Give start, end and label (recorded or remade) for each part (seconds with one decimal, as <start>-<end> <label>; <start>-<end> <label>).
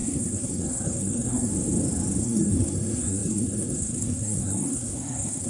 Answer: 0.0-1.5 remade; 1.5-2.2 recorded; 2.2-5.5 remade